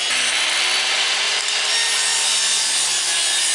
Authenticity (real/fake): real